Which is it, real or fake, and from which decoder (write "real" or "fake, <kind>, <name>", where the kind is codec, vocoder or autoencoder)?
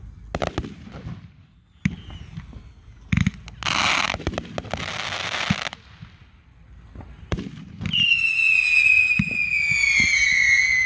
real